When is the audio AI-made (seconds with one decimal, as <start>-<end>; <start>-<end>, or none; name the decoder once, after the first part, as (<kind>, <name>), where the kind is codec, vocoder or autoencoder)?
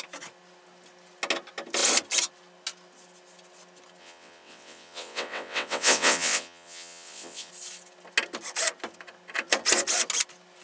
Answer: 4.0-7.5 (vocoder, WaveNeXt)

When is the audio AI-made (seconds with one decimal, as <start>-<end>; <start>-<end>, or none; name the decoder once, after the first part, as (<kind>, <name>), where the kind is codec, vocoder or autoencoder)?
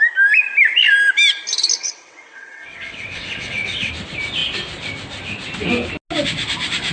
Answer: 1.8-3.9 (vocoder, WaveNeXt)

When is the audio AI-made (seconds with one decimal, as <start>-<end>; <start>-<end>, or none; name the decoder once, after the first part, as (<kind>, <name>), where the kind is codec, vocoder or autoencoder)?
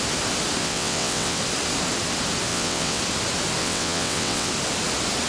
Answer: 0.6-1.4 (vocoder, WaveNeXt); 2.5-3.0; 3.6-4.5